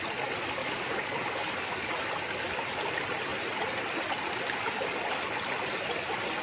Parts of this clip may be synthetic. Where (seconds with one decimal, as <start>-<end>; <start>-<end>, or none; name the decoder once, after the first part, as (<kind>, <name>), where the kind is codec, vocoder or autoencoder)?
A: 0.6-1.9 (codec, DAC)

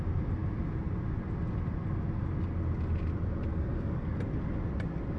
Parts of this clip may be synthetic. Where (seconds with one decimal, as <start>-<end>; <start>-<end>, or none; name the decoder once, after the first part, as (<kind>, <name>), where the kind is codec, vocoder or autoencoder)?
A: 3.5-4.2 (codec, DAC)

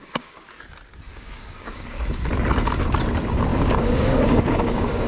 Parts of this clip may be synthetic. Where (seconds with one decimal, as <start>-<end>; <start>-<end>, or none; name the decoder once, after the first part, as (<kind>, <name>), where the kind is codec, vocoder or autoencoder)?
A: 0.0-0.5 (codec, DAC); 1.1-2.2; 3.5-5.1

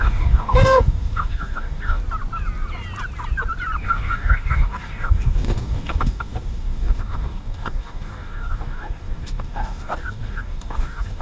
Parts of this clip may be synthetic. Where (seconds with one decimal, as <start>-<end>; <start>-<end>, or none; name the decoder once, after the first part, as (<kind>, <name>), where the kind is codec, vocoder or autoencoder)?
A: 0.0-2.0 (codec, DAC); 3.8-11.2